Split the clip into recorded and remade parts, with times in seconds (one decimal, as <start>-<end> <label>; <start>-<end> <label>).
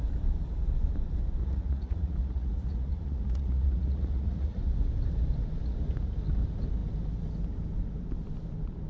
0.0-1.4 recorded; 1.4-4.6 remade; 4.6-8.9 recorded